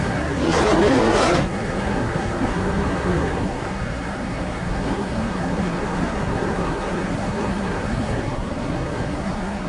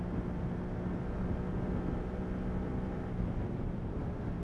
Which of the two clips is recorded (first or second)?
second